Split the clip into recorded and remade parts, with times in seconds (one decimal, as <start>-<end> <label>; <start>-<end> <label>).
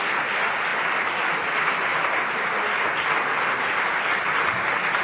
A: 0.0-5.0 recorded